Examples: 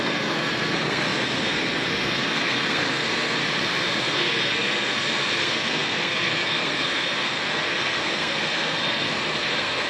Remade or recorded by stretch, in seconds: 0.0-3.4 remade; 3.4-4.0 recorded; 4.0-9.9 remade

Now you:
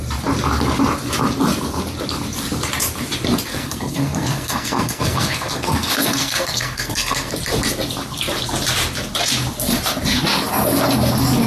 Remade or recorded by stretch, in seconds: 0.0-3.5 recorded; 3.5-7.3 remade; 7.3-11.5 recorded

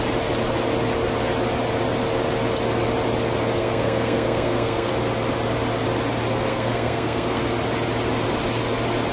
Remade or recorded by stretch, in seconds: 0.0-3.6 recorded; 3.6-4.9 remade; 4.9-6.5 recorded; 6.5-7.4 remade; 7.4-9.1 recorded